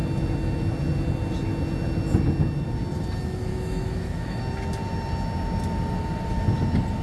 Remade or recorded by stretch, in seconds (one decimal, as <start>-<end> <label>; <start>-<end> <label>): 0.0-3.5 recorded; 3.5-4.4 remade; 4.4-7.0 recorded